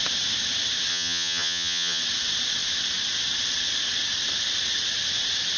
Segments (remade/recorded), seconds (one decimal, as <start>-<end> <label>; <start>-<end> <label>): 0.0-0.9 recorded; 0.9-2.0 remade; 2.0-5.6 recorded